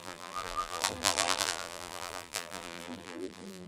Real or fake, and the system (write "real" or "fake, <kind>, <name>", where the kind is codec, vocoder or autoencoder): fake, vocoder, BigVGAN v2